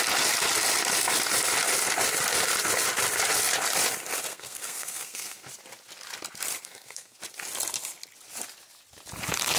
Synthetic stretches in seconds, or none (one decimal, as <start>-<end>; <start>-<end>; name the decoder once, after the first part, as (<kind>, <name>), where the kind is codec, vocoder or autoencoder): 4.3-5.5 (codec, SNAC); 6.6-7.2